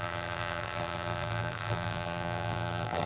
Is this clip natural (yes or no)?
no